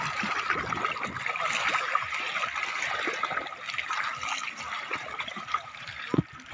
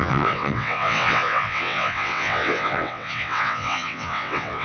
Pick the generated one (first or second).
second